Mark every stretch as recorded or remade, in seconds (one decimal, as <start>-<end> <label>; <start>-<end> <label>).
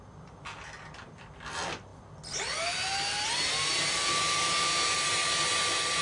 0.0-6.0 recorded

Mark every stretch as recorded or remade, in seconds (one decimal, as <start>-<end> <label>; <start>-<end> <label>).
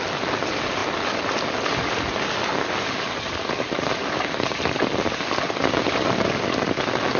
0.0-7.2 recorded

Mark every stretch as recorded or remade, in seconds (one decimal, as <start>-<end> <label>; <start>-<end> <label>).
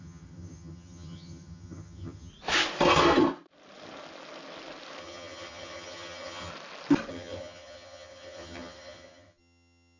0.0-2.3 remade; 2.3-5.0 recorded; 5.0-6.5 remade; 6.5-7.1 recorded; 7.1-10.0 remade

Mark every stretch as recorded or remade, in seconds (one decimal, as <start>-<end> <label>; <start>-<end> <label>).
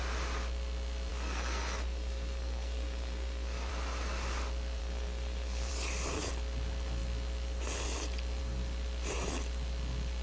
0.0-1.1 recorded; 1.1-3.7 remade; 3.7-4.8 recorded; 4.8-5.7 remade; 5.7-10.2 recorded